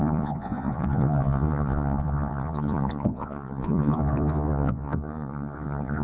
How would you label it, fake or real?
fake